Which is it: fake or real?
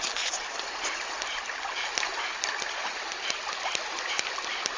real